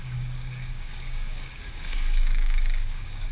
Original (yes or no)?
no